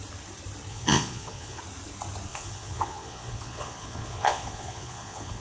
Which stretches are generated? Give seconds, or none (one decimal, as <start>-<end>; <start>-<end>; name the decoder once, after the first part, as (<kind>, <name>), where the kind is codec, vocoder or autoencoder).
0.7-1.6 (vocoder, Vocos); 2.3-5.4